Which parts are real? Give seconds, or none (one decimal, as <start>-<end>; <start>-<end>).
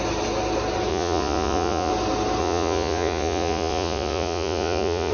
0.0-0.9; 1.9-2.4